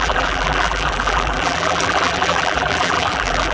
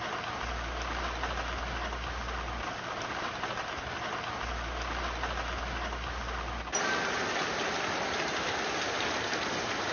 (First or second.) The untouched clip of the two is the second